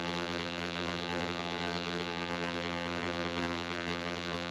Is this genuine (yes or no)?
no